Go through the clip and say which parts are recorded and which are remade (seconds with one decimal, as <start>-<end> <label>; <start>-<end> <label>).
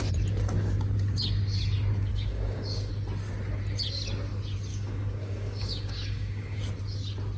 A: 0.0-2.1 recorded; 2.1-2.9 remade; 2.9-4.7 recorded; 4.7-6.6 remade; 6.6-7.4 recorded